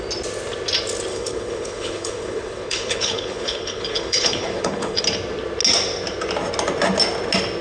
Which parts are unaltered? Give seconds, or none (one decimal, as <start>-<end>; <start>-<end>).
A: 0.0-1.1; 5.0-7.6